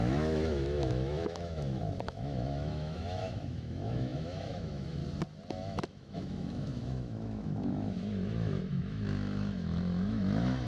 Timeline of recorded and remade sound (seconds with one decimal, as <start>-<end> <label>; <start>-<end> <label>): 0.0-5.0 remade; 5.0-5.5 recorded; 5.5-10.7 remade